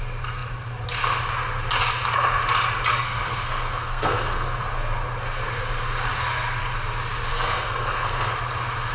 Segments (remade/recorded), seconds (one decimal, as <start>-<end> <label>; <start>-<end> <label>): 0.0-2.9 recorded; 2.9-4.6 remade; 4.6-7.3 recorded; 7.3-8.3 remade; 8.3-8.9 recorded